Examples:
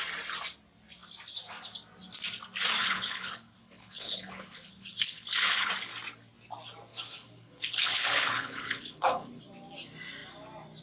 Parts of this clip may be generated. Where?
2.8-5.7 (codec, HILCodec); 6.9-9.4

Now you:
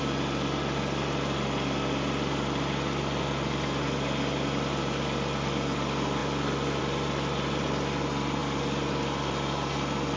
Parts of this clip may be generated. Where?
none

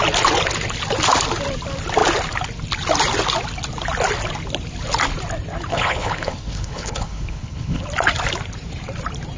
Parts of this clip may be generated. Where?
5.7-7.8 (codec, HILCodec)

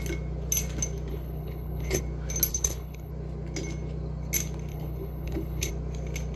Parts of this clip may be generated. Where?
1.1-2.0 (codec, HILCodec); 2.5-3.1; 4.7-5.7